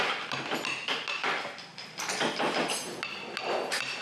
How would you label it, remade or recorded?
recorded